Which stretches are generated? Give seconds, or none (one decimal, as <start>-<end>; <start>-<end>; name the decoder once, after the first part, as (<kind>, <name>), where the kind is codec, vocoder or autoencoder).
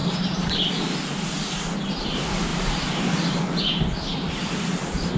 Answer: 0.0-0.7 (vocoder, BigVGAN v2); 2.5-3.1